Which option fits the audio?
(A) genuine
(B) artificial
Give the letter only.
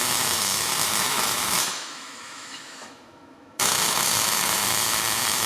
B